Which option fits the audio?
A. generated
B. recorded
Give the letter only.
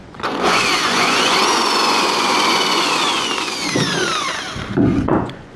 A